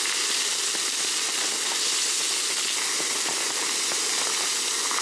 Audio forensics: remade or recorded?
recorded